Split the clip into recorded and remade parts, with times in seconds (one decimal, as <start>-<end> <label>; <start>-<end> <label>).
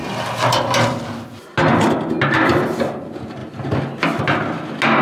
0.0-5.0 recorded